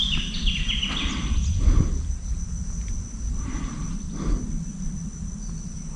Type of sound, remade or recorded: recorded